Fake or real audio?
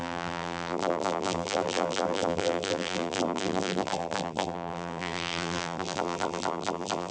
fake